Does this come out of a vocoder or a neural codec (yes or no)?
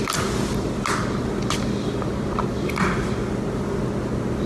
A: no